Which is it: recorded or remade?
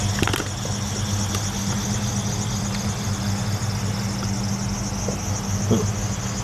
recorded